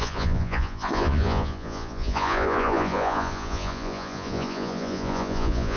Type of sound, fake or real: fake